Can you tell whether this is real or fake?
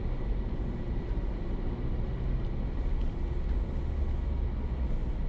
real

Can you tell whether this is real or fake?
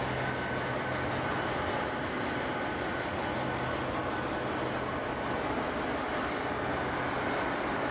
real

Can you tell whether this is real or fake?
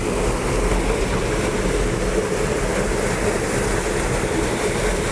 real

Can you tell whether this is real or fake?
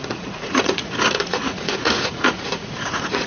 fake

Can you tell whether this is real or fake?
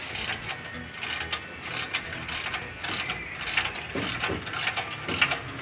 real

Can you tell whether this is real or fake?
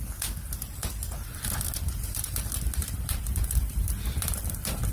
real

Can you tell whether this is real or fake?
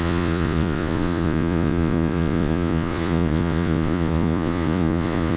fake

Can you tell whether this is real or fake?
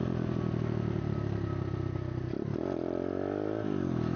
real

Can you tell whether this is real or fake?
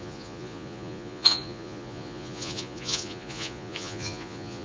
fake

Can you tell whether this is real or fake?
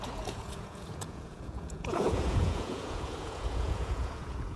fake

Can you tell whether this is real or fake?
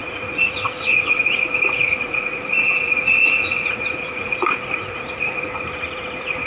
fake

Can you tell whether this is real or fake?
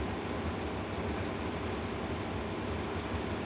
real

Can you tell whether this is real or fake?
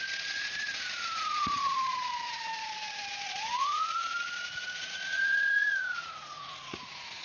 fake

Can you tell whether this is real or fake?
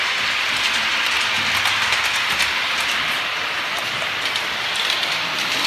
real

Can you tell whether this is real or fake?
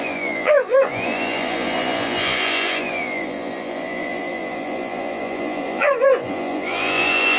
fake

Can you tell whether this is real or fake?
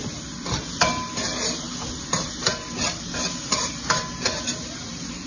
real